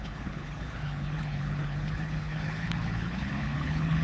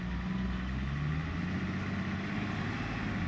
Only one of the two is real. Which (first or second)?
second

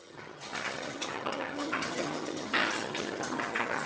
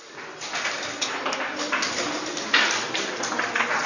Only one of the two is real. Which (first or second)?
second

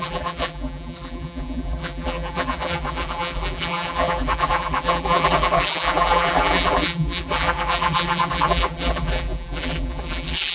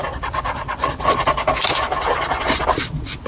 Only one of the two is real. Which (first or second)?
second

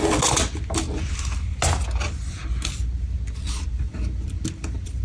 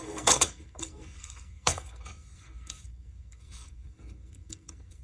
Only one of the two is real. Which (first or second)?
first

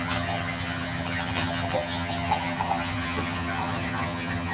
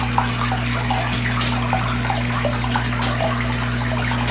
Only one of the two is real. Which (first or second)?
second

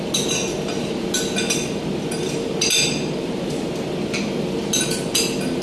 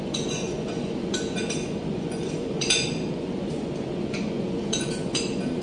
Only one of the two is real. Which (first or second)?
first